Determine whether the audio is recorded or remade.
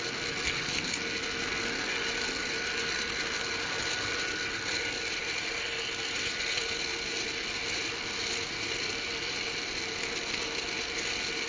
recorded